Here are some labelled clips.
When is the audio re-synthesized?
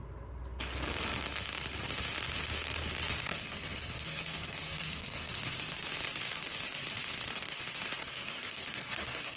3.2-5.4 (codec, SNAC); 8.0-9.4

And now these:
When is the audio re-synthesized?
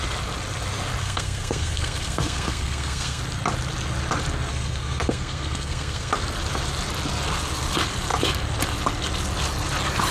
1.0-3.2 (codec, SNAC); 4.5-6.1